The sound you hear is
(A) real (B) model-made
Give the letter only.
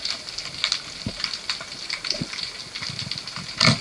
A